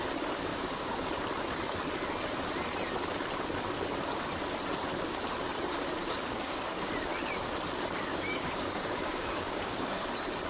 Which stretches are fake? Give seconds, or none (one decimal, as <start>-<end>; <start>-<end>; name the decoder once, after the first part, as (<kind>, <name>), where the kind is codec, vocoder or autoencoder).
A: 0.5-1.1 (codec, DAC); 6.0-6.9; 8.1-10.1